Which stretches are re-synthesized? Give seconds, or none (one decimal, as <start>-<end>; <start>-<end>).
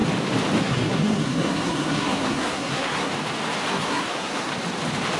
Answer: 0.6-3.1; 3.7-4.5